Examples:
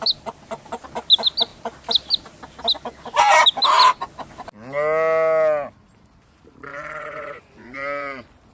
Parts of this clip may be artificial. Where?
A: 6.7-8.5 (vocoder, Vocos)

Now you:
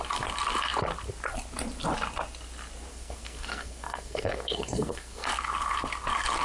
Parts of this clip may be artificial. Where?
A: 2.9-5.3 (codec, SNAC)